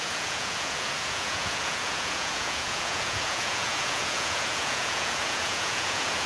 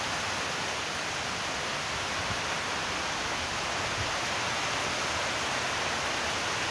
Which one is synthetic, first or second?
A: first